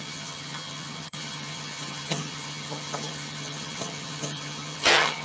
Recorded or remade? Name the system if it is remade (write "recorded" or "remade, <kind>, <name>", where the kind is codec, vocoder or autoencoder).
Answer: remade, vocoder, HiFi-GAN